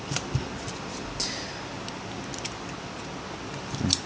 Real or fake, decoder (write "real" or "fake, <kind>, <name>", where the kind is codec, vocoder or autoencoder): real